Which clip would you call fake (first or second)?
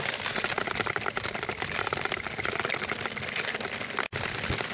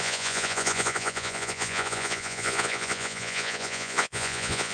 second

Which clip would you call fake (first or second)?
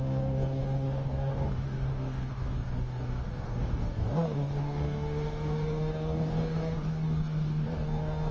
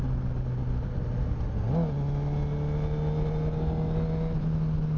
first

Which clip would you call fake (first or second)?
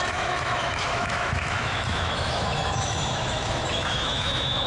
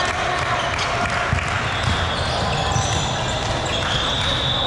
first